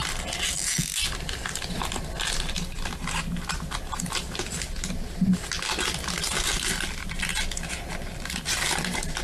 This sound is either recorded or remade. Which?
recorded